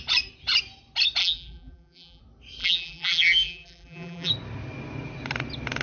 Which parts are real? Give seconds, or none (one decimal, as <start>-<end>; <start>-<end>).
0.0-1.2; 2.2-2.6; 4.3-5.8